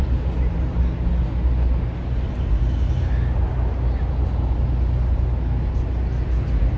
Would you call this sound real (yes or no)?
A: yes